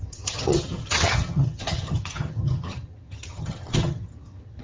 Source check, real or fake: fake